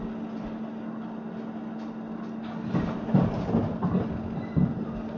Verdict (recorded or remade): recorded